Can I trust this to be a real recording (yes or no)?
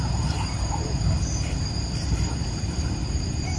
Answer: no